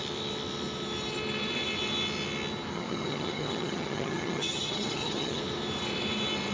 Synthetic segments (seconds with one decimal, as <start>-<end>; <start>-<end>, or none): 2.7-5.4